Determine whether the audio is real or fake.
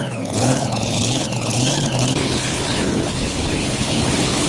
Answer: fake